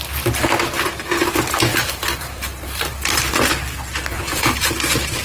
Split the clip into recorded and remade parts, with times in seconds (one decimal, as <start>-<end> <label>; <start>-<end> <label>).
0.0-1.7 recorded; 1.7-3.3 remade; 3.3-4.1 recorded; 4.1-4.7 remade; 4.7-5.2 recorded